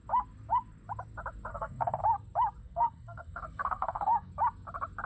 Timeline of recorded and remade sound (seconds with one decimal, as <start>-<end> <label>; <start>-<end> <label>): 0.0-1.5 recorded; 1.5-2.0 remade; 2.0-2.6 recorded; 2.6-4.3 remade; 4.3-5.1 recorded